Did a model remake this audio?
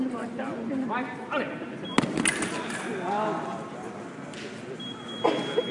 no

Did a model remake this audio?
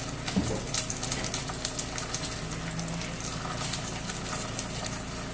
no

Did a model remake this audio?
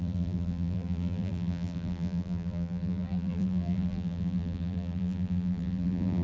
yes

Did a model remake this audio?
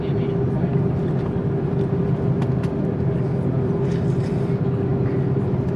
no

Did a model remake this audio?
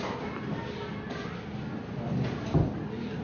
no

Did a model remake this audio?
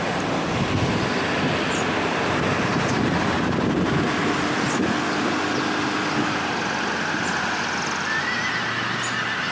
no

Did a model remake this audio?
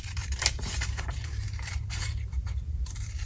yes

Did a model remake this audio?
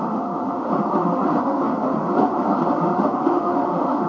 yes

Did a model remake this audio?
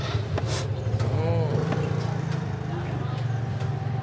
no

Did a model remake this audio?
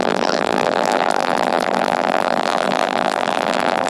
yes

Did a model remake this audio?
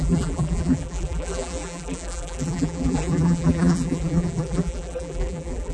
yes